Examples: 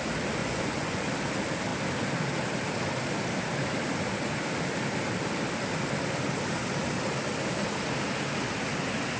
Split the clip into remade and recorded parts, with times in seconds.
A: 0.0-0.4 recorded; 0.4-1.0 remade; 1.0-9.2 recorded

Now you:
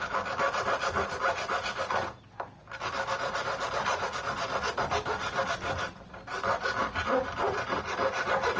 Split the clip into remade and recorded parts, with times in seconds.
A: 0.0-8.6 recorded